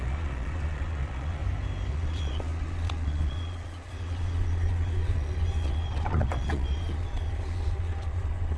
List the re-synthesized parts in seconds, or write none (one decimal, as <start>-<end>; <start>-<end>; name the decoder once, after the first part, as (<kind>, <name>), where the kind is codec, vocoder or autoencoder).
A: 0.0-1.4 (vocoder, Vocos); 1.9-8.6